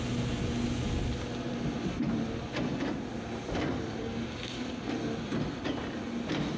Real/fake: real